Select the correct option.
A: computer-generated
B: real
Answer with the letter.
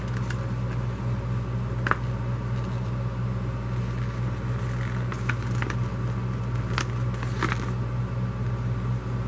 B